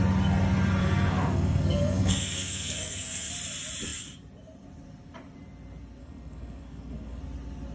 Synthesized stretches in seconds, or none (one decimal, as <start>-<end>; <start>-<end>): 0.8-3.3; 6.0-7.2